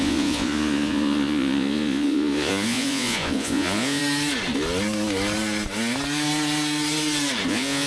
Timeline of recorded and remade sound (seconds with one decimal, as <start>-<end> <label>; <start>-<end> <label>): 0.0-4.0 remade; 4.0-7.5 recorded; 7.5-7.9 remade